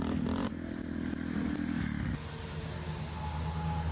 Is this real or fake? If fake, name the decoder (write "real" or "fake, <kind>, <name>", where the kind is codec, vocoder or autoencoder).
real